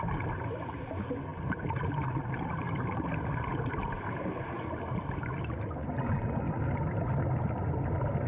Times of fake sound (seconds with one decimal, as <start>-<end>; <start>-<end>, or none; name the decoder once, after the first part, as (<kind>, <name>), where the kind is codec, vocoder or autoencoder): none